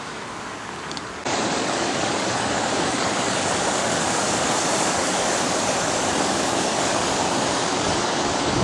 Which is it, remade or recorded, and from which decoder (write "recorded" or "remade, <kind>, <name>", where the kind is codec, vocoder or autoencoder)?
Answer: remade, codec, DAC